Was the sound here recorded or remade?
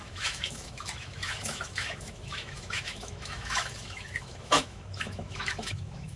remade